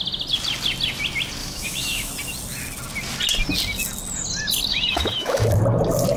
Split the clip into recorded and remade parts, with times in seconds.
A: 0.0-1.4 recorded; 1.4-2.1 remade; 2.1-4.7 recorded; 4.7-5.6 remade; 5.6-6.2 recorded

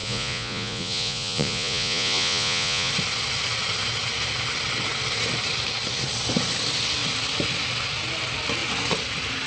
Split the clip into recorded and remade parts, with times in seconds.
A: 0.0-2.9 remade; 2.9-9.5 recorded

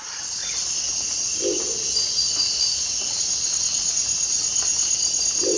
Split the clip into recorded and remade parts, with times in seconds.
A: 0.0-5.6 recorded